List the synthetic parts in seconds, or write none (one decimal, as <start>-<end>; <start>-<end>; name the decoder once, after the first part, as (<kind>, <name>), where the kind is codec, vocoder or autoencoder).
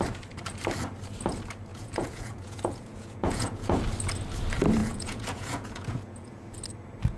1.7-3.8 (vocoder, Vocos); 4.8-6.4